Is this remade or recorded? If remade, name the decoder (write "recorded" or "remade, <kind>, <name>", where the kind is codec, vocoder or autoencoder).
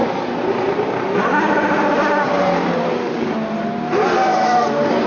recorded